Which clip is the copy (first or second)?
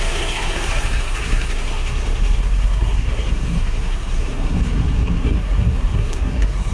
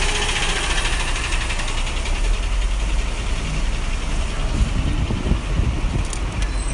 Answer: first